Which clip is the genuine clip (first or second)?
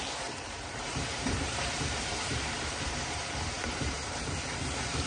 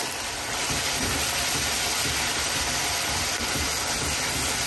second